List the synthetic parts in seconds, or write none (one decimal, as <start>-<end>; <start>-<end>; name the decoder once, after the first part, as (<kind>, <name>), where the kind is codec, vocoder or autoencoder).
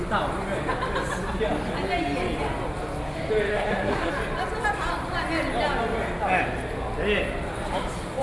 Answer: 3.5-4.1 (codec, SNAC)